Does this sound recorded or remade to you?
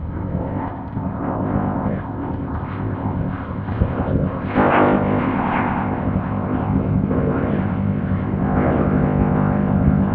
remade